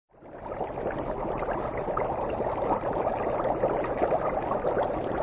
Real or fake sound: real